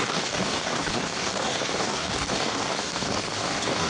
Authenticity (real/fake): fake